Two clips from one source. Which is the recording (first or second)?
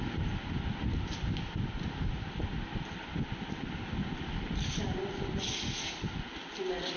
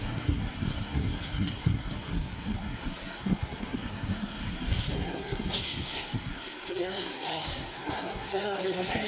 first